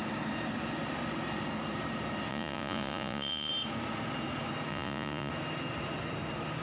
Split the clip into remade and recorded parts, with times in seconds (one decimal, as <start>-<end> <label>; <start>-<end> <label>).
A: 0.0-2.3 recorded; 2.3-3.5 remade; 3.5-4.7 recorded; 4.7-5.3 remade; 5.3-6.6 recorded